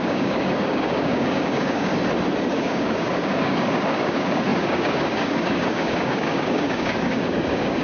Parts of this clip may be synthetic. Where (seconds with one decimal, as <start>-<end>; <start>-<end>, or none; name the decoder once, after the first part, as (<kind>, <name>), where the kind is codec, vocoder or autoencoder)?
0.0-1.9 (codec, DAC); 2.5-7.8